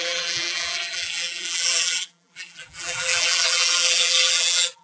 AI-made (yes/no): yes